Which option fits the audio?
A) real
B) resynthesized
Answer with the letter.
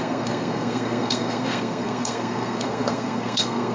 B